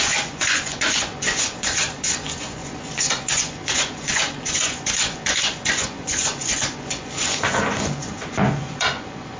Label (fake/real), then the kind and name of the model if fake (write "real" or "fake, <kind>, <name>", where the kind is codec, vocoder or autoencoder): fake, vocoder, Vocos